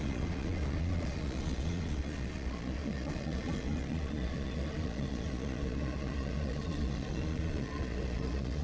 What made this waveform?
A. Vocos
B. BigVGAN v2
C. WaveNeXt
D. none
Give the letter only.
A